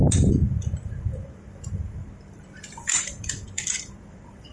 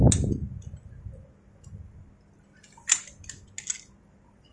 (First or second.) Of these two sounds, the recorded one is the second